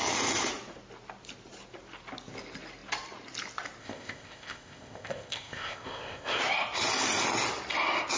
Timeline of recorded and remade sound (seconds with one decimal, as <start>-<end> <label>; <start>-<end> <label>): 0.0-3.8 recorded; 3.8-6.4 remade; 6.4-8.2 recorded